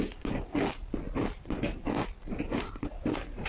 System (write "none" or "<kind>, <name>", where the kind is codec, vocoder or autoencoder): none